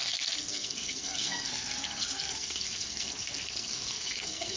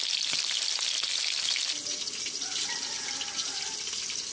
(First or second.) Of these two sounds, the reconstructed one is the first